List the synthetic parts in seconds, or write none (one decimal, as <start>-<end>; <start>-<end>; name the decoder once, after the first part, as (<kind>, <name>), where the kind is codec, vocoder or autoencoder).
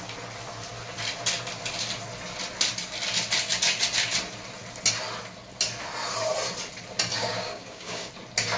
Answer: 7.1-8.1 (codec, DAC)